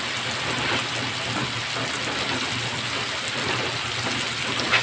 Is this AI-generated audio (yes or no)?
no